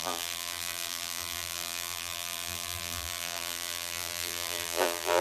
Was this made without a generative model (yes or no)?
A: no